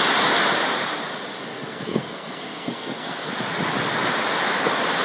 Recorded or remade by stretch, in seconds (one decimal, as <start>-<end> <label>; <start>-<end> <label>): 0.0-1.5 recorded; 1.5-3.3 remade; 3.3-5.0 recorded